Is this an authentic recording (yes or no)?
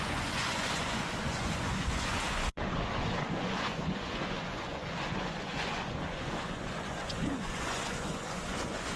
no